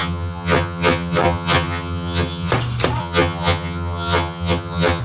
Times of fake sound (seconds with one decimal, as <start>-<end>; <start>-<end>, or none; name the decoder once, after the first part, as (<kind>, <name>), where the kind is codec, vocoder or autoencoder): 0.0-2.5 (vocoder, HiFi-GAN); 3.0-5.0